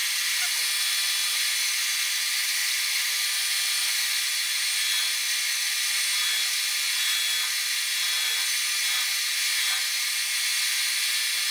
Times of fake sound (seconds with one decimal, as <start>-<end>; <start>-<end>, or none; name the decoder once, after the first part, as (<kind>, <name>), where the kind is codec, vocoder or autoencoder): 0.0-0.5 (vocoder, BigVGAN v2); 2.6-3.1